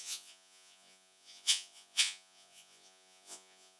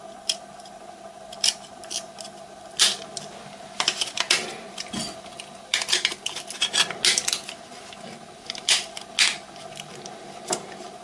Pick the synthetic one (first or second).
first